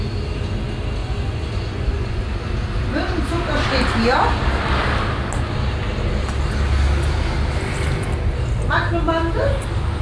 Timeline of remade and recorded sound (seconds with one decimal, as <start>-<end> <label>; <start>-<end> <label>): 0.0-1.0 recorded; 1.0-2.3 remade; 2.3-10.0 recorded